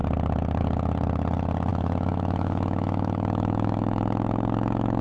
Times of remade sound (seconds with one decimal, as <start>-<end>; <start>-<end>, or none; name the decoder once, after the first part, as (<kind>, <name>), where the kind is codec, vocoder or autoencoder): 1.7-5.0 (autoencoder, DAC-VAE)